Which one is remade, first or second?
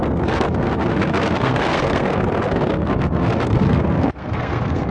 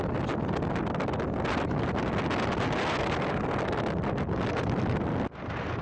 first